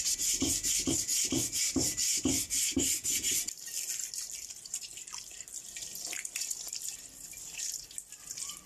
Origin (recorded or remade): recorded